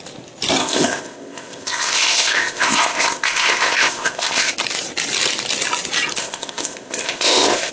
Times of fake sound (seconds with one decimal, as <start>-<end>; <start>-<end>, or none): 0.6-4.5; 6.2-7.7